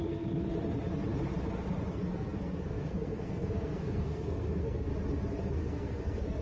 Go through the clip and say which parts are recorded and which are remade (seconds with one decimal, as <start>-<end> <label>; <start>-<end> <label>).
0.0-0.5 remade; 0.5-1.9 recorded; 1.9-4.9 remade; 4.9-5.5 recorded; 5.5-6.4 remade